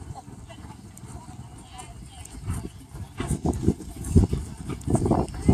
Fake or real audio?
real